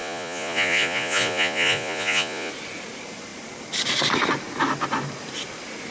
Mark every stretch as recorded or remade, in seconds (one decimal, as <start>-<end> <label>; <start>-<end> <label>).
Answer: 0.0-2.5 remade; 2.5-5.9 recorded